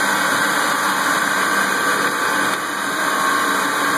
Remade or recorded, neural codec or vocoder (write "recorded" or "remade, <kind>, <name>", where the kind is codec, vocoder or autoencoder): recorded